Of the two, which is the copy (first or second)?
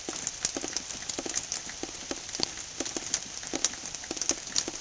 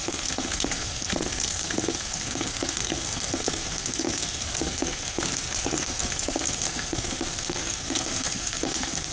second